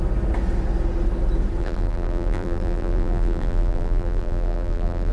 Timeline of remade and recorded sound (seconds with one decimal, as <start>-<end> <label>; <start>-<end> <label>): 0.0-1.6 recorded; 1.6-5.1 remade